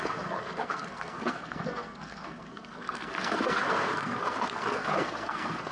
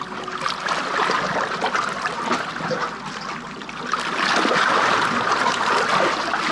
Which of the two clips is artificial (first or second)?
first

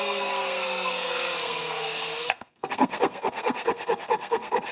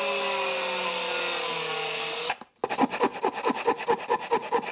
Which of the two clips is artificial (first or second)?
first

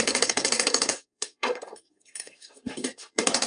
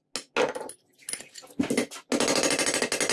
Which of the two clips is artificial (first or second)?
first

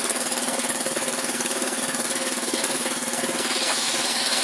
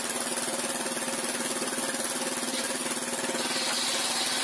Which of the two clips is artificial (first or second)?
first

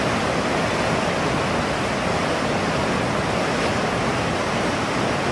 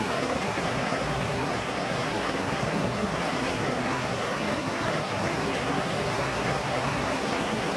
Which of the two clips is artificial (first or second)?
second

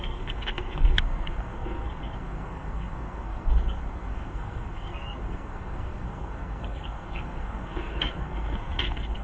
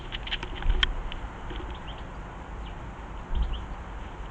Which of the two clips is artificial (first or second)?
first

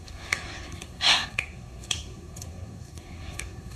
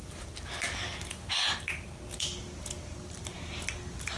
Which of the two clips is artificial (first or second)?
first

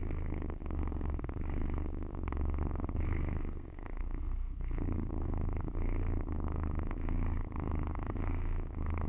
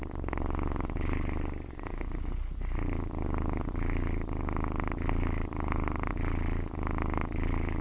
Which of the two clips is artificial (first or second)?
first